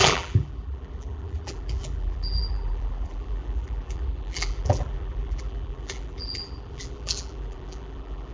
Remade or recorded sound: remade